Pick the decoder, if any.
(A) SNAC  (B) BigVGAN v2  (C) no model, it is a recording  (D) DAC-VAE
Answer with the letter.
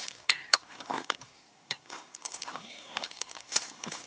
A